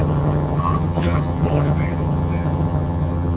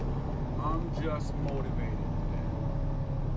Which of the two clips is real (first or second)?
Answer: second